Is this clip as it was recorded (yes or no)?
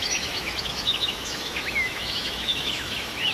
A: no